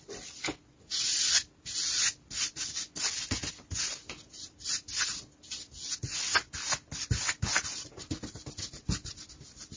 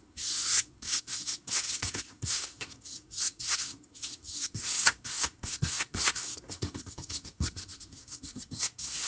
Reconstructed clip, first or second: second